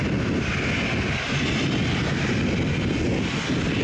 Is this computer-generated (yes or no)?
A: no